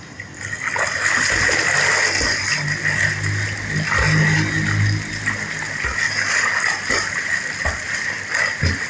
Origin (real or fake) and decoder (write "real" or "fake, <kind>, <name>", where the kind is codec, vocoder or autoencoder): real